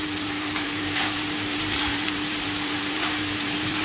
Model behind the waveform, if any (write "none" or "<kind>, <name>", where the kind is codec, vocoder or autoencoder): vocoder, BigVGAN v2